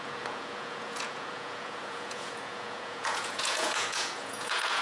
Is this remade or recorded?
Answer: remade